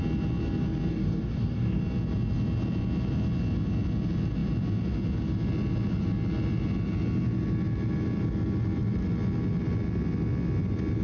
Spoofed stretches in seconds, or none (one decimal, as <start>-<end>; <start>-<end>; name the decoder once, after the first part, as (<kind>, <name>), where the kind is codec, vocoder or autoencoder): 0.9-1.8 (codec, DAC)